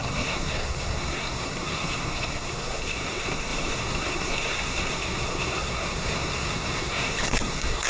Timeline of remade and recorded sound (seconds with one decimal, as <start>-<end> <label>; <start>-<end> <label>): 0.0-7.9 remade